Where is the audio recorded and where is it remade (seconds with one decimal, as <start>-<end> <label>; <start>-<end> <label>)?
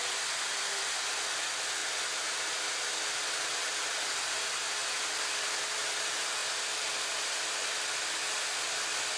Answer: 0.0-0.9 remade; 0.9-4.8 recorded; 4.8-5.8 remade; 5.8-6.4 recorded; 6.4-7.2 remade; 7.2-9.2 recorded